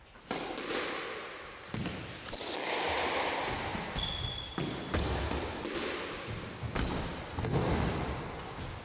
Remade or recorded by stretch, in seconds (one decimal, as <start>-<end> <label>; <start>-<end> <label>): 0.0-8.8 recorded